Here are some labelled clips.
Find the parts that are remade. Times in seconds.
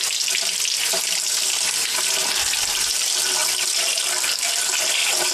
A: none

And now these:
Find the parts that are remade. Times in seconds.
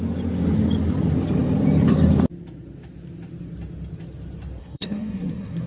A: 4.6-5.7 (codec, SNAC)